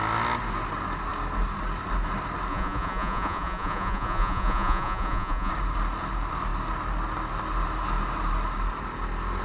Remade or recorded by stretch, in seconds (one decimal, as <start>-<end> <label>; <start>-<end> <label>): 0.0-2.5 recorded; 2.5-5.5 remade; 5.5-9.4 recorded